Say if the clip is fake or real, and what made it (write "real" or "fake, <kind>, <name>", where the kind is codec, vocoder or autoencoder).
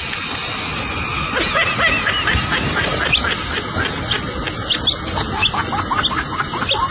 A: real